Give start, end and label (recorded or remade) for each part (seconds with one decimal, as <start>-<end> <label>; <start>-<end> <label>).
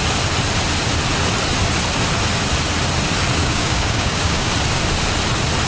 0.0-3.4 recorded; 3.4-4.5 remade; 4.5-5.7 recorded